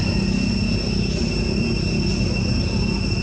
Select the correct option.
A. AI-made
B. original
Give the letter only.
B